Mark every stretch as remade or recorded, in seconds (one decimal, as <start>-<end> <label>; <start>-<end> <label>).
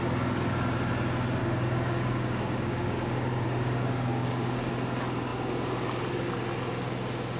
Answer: 0.0-1.4 recorded; 1.4-4.7 remade; 4.7-7.4 recorded